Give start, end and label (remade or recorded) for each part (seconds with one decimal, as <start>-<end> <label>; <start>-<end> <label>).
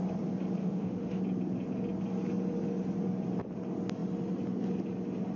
0.0-0.6 recorded; 0.6-1.2 remade; 1.2-5.4 recorded